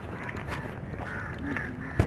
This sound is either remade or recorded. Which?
recorded